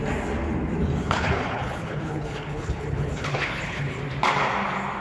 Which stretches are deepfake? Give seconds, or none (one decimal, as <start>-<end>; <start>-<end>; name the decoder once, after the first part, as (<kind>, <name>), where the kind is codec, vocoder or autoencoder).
1.0-4.0 (codec, HILCodec)

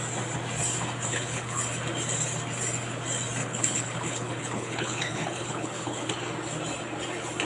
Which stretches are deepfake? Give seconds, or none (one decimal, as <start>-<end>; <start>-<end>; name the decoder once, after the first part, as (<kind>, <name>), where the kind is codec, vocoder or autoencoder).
1.1-1.6 (codec, HILCodec); 3.4-6.1